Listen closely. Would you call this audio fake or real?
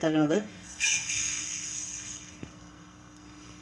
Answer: fake